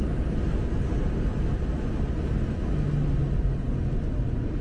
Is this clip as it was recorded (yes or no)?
yes